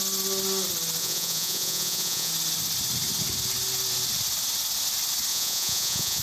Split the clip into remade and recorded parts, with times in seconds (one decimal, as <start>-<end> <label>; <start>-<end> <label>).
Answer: 0.0-1.0 recorded; 1.0-2.3 remade; 2.3-5.3 recorded; 5.3-6.2 remade